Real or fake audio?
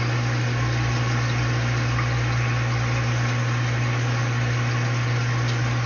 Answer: real